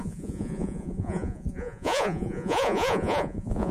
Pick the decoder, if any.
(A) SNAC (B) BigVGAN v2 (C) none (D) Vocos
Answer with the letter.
D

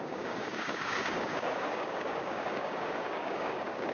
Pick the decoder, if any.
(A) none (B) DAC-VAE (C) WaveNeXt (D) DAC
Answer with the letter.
D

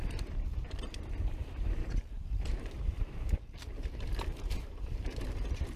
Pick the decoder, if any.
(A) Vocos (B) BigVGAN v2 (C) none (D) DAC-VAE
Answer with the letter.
B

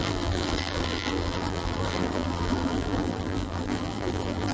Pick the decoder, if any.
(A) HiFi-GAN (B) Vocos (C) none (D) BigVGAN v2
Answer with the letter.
D